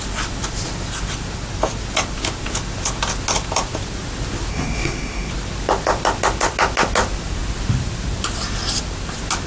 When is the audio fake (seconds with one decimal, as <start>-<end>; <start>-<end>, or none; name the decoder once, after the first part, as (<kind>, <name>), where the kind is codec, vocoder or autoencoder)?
4.5-5.3 (codec, SNAC)